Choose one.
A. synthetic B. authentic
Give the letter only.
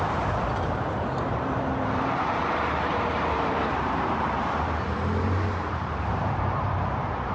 A